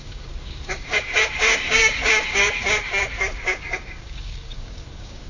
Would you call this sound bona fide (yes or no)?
no